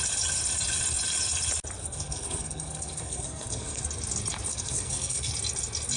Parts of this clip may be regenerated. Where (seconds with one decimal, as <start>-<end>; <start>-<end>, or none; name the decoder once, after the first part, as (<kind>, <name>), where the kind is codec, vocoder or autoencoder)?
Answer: 1.8-3.8 (codec, SNAC); 4.5-5.3